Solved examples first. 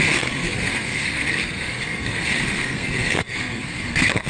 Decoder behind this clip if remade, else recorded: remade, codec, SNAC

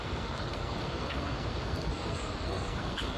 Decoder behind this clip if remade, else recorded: remade, codec, SNAC